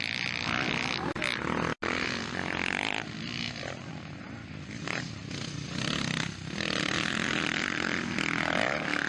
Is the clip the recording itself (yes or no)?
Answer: yes